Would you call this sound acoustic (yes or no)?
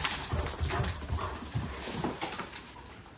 no